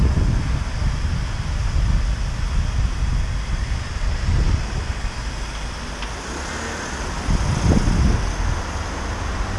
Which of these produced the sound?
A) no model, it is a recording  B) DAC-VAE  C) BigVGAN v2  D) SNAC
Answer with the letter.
A